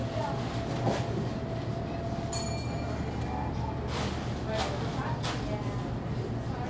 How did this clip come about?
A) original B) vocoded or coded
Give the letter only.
A